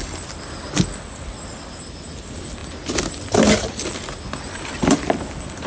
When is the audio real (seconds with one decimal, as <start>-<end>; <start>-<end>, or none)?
0.0-5.7